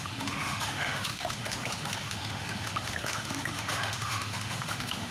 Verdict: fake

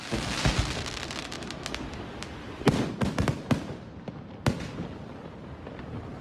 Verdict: real